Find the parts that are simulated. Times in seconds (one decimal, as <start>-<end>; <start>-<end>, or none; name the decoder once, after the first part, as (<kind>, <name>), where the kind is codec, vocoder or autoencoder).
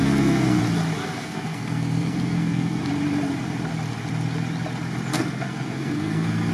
0.0-0.6 (codec, SNAC); 1.0-2.8; 5.1-6.5